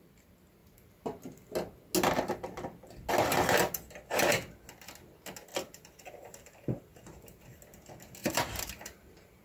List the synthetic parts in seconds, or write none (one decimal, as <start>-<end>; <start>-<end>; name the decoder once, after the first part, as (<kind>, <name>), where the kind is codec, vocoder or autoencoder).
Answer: 5.5-7.6 (vocoder, BigVGAN v2); 8.2-9.4